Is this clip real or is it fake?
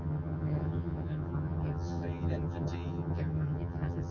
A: fake